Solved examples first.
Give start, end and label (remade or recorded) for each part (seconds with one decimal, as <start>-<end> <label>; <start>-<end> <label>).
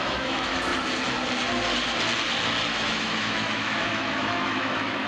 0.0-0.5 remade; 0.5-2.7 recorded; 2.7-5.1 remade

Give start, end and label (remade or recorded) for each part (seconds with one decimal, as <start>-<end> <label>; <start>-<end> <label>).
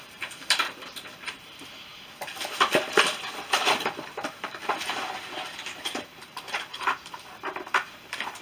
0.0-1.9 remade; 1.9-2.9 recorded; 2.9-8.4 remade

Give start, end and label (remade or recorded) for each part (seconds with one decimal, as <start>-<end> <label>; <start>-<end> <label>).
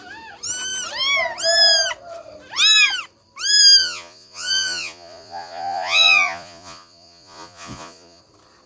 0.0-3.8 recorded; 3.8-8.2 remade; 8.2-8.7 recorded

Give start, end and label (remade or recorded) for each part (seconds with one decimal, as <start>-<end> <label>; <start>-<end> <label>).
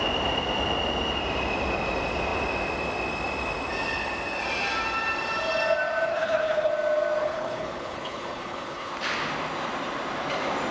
0.0-6.1 recorded; 6.1-6.7 remade; 6.7-7.2 recorded; 7.2-8.9 remade; 8.9-10.7 recorded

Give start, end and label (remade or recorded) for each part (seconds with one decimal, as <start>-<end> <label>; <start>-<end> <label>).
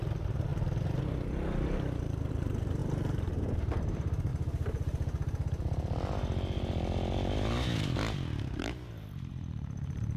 0.0-0.5 remade; 0.5-2.3 recorded; 2.3-4.3 remade; 4.3-8.6 recorded; 8.6-10.2 remade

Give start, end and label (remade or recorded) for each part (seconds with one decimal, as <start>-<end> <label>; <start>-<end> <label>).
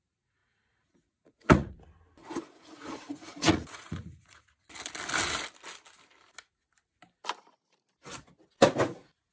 0.0-0.4 recorded; 0.4-1.7 remade; 1.7-2.2 recorded; 2.2-4.7 remade; 4.7-9.3 recorded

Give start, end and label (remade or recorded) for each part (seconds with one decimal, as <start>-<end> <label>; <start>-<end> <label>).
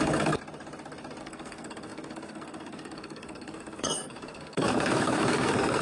0.0-0.4 remade; 0.4-1.2 recorded; 1.2-5.8 remade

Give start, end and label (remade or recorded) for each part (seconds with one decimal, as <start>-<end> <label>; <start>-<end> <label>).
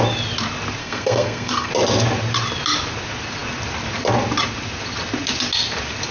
0.0-0.8 recorded; 0.8-1.7 remade; 1.7-6.1 recorded